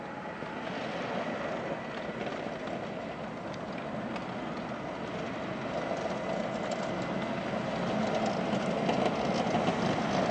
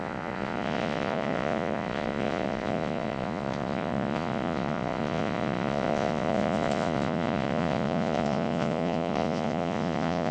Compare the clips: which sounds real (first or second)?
first